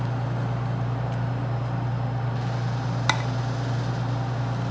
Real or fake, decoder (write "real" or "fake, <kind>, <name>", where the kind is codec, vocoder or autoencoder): real